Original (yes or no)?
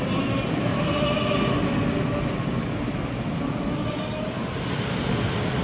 yes